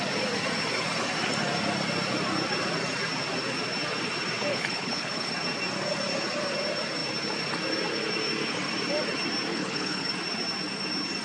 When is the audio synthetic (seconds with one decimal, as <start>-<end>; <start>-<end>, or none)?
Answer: 4.5-5.3; 9.5-10.1